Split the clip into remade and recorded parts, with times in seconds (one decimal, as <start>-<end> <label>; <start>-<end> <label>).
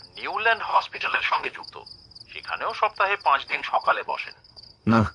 0.0-0.7 recorded; 0.7-1.7 remade; 1.7-3.5 recorded; 3.5-5.1 remade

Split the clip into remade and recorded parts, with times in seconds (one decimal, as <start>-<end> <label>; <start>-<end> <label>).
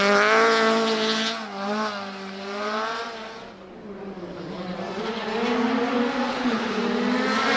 0.0-6.3 recorded; 6.3-6.8 remade; 6.8-7.6 recorded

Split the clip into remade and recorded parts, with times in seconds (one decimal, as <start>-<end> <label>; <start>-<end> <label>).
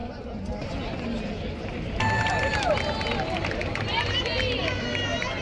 0.0-5.4 recorded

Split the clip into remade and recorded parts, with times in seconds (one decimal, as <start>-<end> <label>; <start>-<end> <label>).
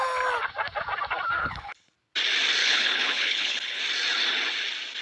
0.0-1.4 recorded; 1.4-1.9 remade; 1.9-2.6 recorded; 2.6-3.8 remade; 3.8-5.0 recorded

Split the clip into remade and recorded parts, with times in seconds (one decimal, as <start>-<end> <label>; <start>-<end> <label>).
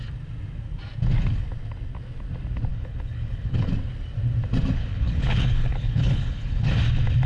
0.0-2.7 recorded; 2.7-3.7 remade; 3.7-4.9 recorded; 4.9-6.7 remade; 6.7-7.3 recorded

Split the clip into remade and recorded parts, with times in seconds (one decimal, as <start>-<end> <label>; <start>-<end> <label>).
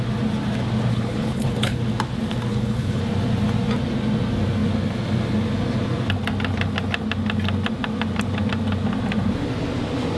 0.0-0.9 recorded; 0.9-1.8 remade; 1.8-2.5 recorded; 2.5-3.0 remade; 3.0-10.2 recorded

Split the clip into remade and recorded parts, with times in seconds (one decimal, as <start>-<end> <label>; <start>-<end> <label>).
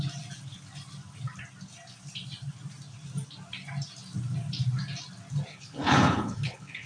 0.0-5.5 recorded; 5.5-6.9 remade